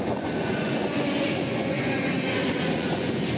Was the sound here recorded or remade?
remade